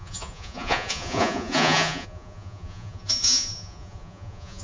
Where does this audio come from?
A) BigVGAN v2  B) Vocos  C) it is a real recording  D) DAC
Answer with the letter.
B